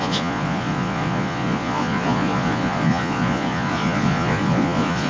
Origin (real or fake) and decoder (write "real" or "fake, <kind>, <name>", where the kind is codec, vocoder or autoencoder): fake, vocoder, Vocos